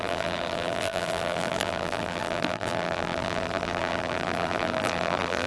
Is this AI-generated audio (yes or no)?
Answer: yes